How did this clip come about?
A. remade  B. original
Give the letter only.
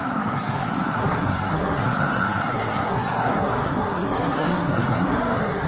A